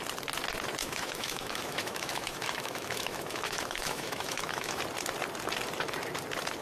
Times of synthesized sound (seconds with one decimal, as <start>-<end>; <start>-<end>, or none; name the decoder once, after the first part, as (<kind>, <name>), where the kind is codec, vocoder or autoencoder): 0.8-4.8 (autoencoder, DAC-VAE)